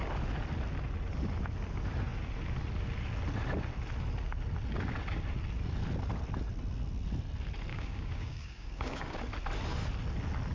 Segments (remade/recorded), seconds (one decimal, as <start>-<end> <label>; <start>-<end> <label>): 0.0-7.7 recorded; 7.7-9.2 remade; 9.2-10.5 recorded